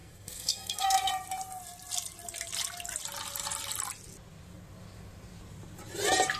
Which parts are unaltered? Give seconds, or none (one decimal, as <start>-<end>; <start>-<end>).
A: 1.1-6.4